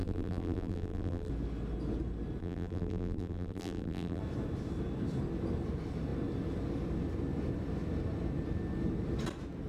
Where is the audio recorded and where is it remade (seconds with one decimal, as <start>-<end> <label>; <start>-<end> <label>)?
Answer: 0.0-1.3 remade; 1.3-2.4 recorded; 2.4-4.2 remade; 4.2-9.7 recorded